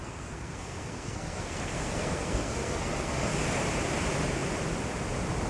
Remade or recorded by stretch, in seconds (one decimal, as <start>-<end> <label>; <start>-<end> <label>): 0.0-3.3 remade; 3.3-5.5 recorded